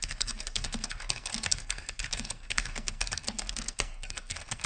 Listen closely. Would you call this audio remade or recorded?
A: remade